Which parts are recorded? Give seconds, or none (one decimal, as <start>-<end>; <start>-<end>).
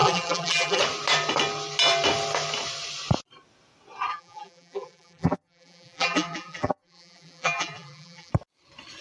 0.8-4.1; 8.3-9.0